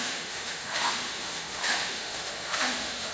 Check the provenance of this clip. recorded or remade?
remade